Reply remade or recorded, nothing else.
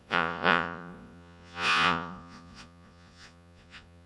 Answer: remade